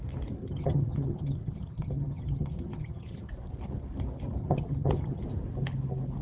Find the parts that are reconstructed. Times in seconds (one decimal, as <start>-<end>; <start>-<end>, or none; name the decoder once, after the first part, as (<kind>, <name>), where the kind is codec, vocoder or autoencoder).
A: 0.4-3.3 (vocoder, HiFi-GAN); 4.4-5.2